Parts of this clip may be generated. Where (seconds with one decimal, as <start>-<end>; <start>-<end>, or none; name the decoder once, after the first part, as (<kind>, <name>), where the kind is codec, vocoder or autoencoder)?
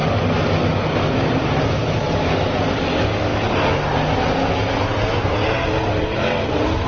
none